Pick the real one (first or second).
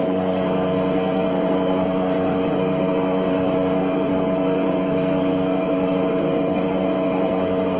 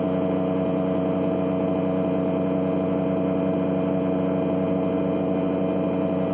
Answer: second